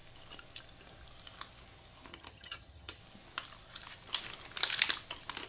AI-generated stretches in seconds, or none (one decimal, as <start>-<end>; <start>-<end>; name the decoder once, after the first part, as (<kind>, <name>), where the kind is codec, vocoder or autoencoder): 2.1-3.0 (vocoder, HiFi-GAN)